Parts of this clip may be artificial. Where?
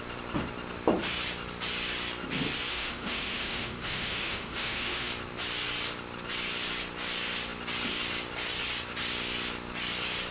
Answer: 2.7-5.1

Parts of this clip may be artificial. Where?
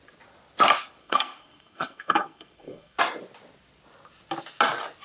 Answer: 1.0-3.0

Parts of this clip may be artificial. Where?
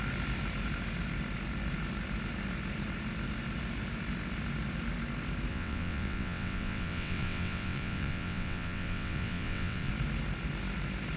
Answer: 5.5-9.9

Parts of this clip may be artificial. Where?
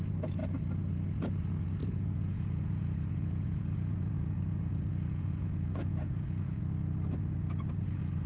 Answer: 1.8-6.6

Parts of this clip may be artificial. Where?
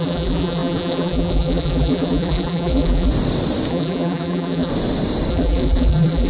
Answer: 0.0-3.1; 3.7-4.7; 5.3-6.3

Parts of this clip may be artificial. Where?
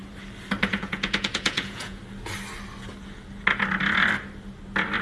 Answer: 0.7-2.0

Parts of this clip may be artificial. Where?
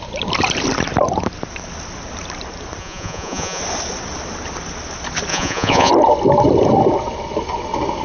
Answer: 2.8-3.6; 5.3-5.9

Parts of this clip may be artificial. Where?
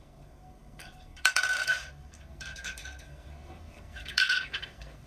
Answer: 0.0-5.1